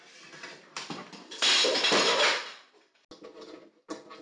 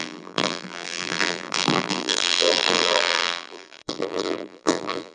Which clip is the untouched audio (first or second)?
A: first